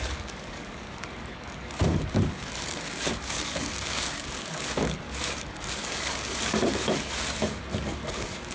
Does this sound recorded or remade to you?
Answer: remade